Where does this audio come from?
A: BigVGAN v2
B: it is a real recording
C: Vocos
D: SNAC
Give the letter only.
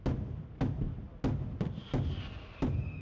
B